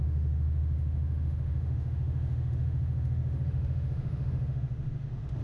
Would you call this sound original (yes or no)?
no